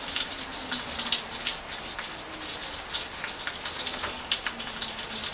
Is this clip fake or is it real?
real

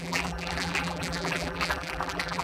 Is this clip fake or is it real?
fake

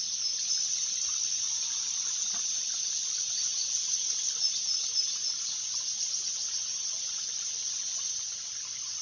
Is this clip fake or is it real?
fake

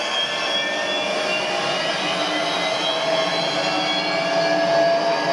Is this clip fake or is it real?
real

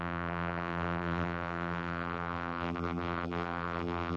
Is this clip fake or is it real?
fake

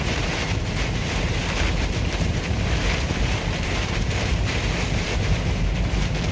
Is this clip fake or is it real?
fake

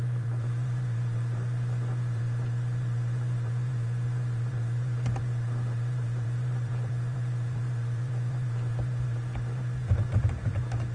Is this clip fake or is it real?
fake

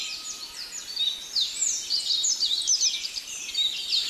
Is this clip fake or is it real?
real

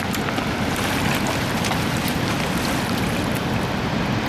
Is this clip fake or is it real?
real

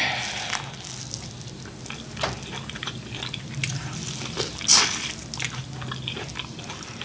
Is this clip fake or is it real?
real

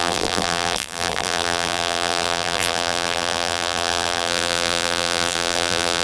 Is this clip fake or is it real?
fake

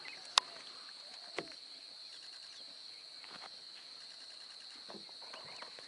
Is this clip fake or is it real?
real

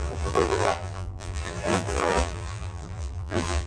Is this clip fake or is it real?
fake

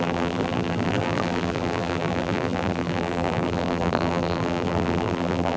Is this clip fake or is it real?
fake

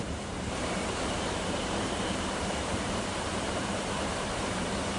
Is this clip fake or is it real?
fake